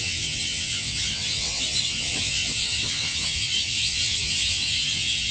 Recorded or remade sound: remade